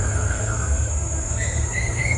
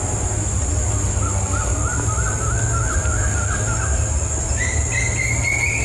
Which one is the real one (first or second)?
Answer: second